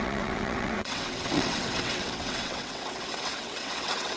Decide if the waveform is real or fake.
fake